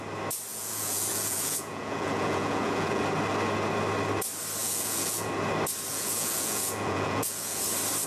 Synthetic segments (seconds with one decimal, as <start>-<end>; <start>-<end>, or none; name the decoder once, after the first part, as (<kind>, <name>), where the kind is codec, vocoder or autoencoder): 0.5-3.0 (vocoder, Vocos); 4.6-5.3; 5.9-7.6